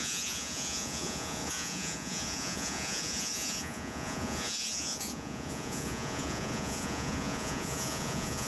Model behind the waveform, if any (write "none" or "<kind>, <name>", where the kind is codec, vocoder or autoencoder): vocoder, Vocos